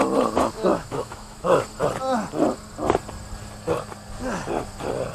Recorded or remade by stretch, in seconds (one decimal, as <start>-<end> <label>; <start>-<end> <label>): 0.0-0.7 recorded; 0.7-1.6 remade; 1.6-5.1 recorded